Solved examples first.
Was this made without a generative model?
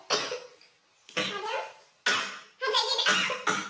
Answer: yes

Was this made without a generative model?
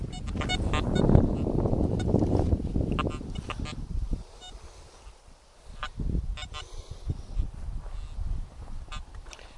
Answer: yes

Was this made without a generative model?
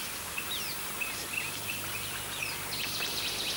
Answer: yes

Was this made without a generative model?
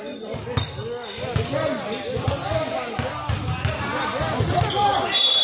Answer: yes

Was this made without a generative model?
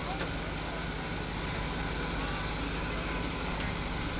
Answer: yes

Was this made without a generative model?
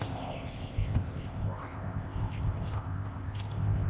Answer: no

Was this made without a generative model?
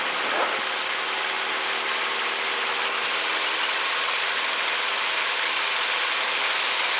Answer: no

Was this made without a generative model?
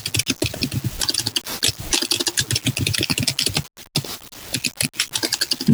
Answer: yes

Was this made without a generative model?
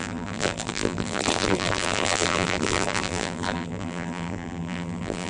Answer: no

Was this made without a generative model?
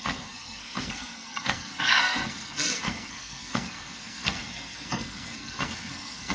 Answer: no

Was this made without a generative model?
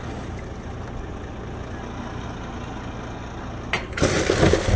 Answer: yes